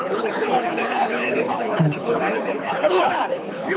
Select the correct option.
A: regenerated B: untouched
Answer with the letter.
A